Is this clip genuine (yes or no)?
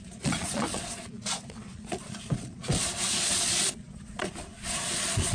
no